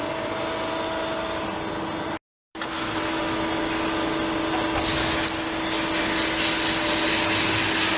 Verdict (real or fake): real